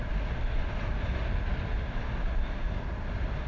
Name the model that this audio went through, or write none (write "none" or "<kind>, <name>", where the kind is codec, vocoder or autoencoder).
none